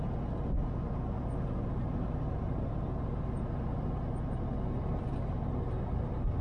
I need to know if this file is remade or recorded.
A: recorded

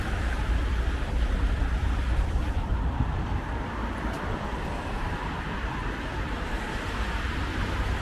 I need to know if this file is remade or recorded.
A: remade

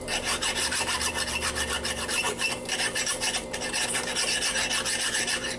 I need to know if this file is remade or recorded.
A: remade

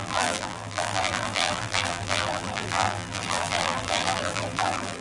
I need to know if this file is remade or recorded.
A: remade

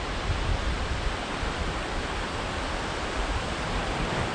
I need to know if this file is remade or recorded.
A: remade